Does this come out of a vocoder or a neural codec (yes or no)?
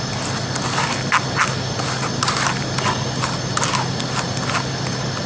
no